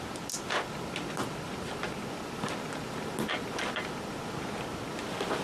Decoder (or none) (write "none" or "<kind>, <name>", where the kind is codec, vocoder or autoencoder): none